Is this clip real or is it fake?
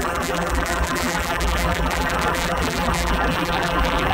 fake